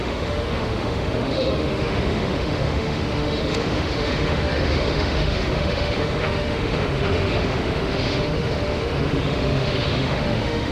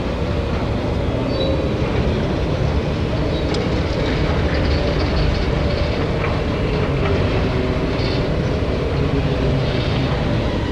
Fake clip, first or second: first